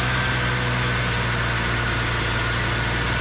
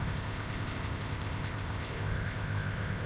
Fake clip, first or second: second